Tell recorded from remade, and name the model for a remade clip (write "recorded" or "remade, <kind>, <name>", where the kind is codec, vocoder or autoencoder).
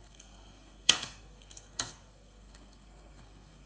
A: remade, codec, SNAC